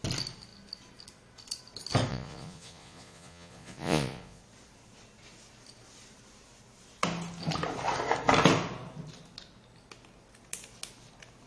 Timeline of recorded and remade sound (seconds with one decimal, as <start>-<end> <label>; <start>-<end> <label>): 0.0-2.1 recorded; 2.1-4.4 remade; 4.4-11.5 recorded